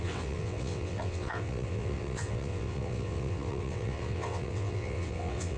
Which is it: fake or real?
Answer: fake